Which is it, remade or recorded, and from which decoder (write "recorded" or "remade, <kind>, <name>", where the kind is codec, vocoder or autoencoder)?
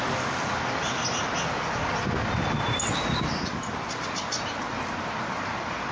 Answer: recorded